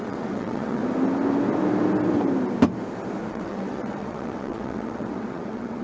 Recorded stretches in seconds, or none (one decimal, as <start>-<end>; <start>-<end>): 0.8-3.3